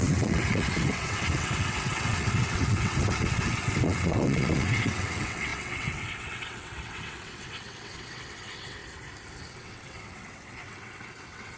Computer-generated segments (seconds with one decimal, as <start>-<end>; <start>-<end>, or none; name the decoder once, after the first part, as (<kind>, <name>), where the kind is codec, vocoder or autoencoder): 0.0-8.8 (vocoder, WaveNeXt); 9.5-11.6